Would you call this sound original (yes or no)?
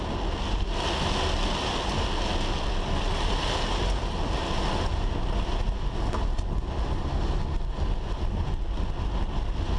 yes